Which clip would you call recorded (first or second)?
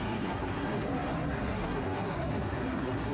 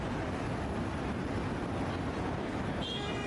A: second